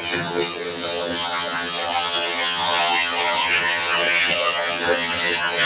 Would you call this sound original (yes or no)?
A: no